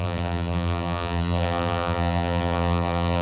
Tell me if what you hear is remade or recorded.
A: remade